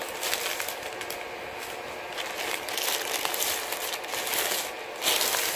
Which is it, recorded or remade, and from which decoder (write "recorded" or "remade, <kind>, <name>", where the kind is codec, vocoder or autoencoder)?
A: recorded